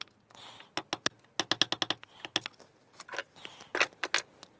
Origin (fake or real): real